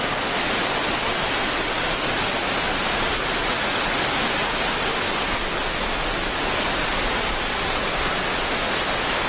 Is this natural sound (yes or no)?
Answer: yes